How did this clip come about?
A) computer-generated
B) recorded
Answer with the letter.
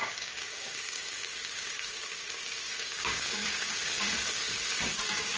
A